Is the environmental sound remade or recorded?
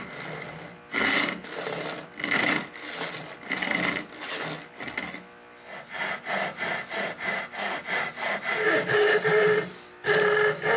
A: recorded